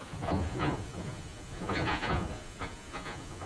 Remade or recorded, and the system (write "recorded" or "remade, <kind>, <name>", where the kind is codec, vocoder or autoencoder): remade, vocoder, Vocos